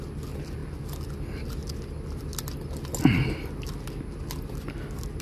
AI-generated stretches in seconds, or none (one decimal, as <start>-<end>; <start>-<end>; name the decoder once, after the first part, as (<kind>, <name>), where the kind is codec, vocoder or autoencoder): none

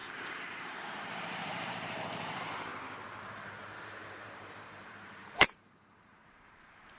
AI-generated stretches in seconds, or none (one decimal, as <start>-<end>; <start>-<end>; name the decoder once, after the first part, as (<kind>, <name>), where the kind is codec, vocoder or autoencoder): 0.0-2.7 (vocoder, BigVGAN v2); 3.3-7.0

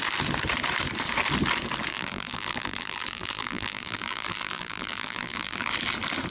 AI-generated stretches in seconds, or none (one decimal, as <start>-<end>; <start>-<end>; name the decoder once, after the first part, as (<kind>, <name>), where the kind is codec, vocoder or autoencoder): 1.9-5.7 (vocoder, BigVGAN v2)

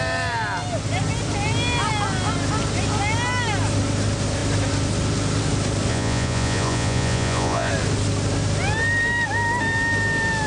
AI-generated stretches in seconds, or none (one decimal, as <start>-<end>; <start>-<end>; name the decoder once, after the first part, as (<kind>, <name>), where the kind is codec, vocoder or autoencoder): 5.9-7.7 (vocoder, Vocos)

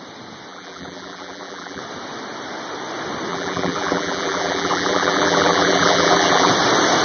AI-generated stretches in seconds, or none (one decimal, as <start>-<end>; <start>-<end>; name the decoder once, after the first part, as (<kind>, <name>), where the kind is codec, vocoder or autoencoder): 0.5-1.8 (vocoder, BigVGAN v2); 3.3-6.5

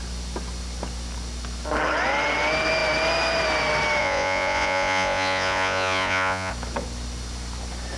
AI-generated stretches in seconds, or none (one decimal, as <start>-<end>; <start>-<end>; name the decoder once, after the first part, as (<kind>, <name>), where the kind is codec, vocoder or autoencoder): 4.0-6.5 (vocoder, Vocos)